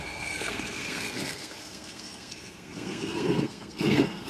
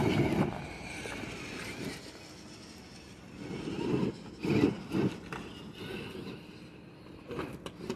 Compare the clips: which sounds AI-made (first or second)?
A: first